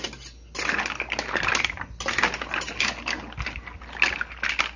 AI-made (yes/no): no